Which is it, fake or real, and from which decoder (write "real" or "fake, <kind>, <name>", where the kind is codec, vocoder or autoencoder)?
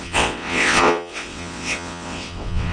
fake, vocoder, WaveNeXt